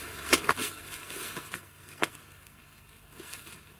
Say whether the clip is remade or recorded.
remade